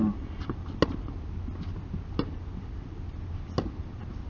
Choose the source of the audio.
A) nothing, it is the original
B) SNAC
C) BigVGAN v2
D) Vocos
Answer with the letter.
A